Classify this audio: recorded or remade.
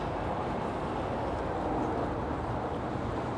remade